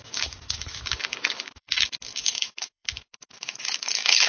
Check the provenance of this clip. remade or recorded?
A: remade